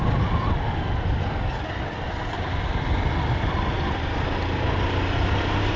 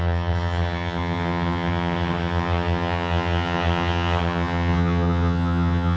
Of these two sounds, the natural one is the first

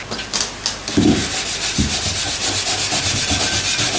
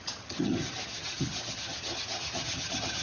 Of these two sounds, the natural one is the first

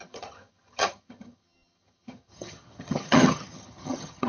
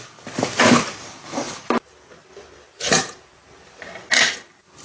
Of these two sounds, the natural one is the second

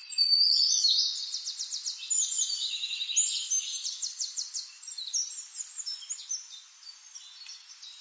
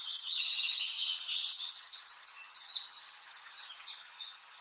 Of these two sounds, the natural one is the first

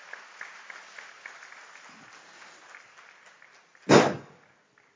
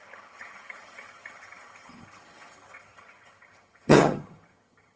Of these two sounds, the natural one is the first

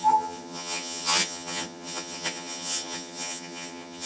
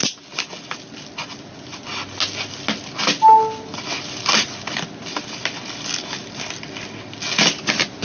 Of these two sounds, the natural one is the second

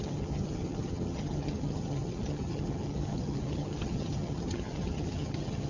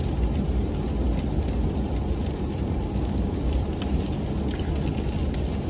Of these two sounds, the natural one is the second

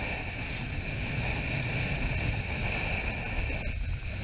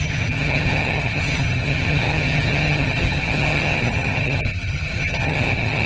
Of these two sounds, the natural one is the first